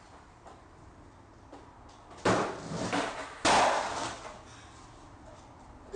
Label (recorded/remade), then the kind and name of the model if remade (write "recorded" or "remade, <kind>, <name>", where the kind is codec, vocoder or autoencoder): recorded